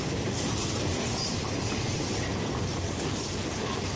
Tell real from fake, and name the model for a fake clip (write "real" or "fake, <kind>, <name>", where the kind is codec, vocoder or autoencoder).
fake, vocoder, BigVGAN v2